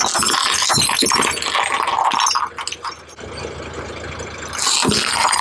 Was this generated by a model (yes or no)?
no